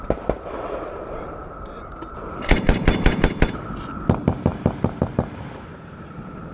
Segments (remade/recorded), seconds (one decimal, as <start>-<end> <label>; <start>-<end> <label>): 0.0-6.5 recorded